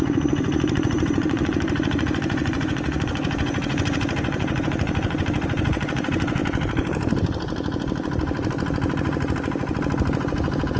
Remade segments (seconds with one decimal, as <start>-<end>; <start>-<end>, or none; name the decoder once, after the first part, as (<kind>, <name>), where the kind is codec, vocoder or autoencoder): 0.0-6.4 (vocoder, Vocos)